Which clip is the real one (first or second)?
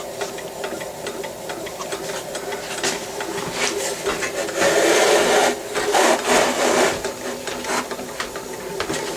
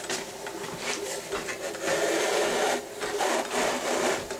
first